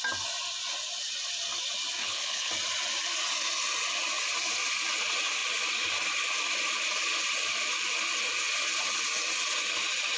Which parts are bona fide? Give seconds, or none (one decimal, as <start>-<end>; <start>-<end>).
0.0-2.0; 2.5-10.2